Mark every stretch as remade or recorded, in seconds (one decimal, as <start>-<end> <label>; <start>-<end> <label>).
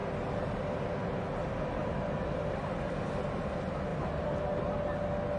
0.0-5.4 recorded